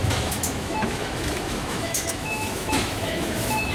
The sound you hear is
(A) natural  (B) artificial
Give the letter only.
B